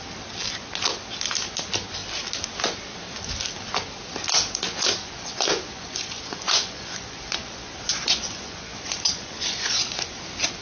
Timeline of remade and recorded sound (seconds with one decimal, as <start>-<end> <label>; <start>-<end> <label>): 0.0-5.0 recorded; 5.0-10.2 remade; 10.2-10.6 recorded